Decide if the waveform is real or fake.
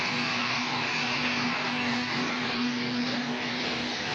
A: fake